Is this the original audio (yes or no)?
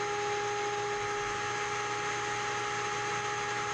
yes